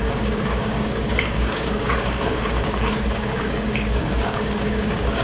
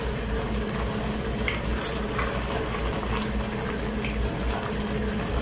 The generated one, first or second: first